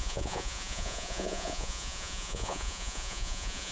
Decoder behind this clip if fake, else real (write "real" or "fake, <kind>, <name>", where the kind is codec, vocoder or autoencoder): fake, vocoder, Vocos